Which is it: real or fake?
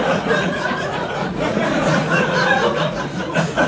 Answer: fake